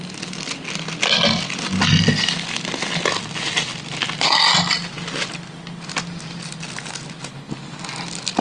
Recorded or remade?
recorded